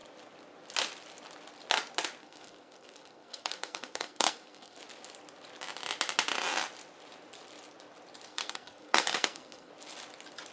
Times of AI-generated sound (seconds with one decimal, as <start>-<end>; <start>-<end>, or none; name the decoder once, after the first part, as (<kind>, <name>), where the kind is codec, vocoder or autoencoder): 2.2-4.8 (codec, SNAC); 8.3-9.7